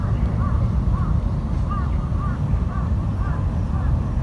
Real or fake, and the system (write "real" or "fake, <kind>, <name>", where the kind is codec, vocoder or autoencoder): real